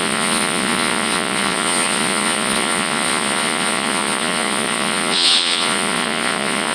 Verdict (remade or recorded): remade